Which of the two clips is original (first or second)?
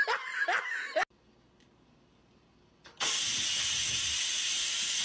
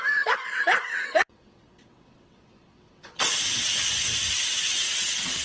first